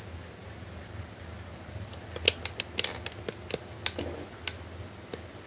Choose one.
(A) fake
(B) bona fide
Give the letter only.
B